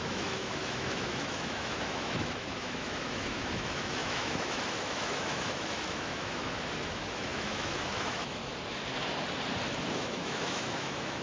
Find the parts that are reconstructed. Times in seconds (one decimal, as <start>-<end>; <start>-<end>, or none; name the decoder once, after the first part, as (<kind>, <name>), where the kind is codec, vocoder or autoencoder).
0.0-8.4 (autoencoder, DAC-VAE); 9.9-11.2

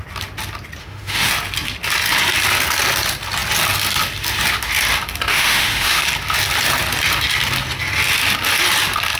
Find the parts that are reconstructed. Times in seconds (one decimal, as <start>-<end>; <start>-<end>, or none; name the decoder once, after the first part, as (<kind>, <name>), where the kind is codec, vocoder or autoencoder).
0.8-1.3 (autoencoder, DAC-VAE); 5.3-6.0

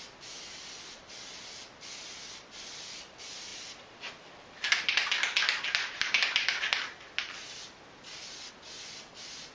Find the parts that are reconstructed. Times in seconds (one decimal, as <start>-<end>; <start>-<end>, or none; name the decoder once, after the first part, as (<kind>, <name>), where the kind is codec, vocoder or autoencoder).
none

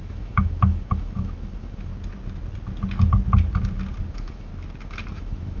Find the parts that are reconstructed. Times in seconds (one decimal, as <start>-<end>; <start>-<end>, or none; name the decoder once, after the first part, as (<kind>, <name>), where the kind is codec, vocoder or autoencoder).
0.0-1.9 (autoencoder, DAC-VAE); 4.1-4.5; 5.1-5.6

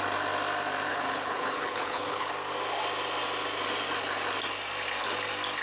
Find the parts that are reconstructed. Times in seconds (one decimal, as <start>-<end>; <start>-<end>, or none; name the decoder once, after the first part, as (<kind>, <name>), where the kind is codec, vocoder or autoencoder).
0.9-2.3 (codec, HILCodec)

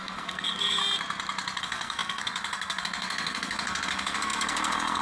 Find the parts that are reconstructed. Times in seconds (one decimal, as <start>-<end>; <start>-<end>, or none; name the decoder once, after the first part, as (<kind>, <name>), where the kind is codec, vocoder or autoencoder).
0.0-0.8 (codec, SNAC); 1.6-5.0

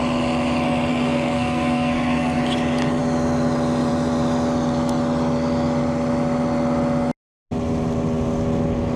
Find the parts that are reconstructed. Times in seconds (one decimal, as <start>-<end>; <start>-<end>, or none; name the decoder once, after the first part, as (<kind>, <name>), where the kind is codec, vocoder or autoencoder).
0.9-2.4 (codec, SNAC)

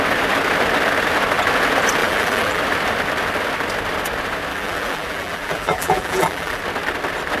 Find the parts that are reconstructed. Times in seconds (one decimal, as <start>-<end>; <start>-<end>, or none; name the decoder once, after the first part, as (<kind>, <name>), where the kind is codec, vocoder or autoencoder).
2.0-2.6 (vocoder, BigVGAN v2); 4.5-6.6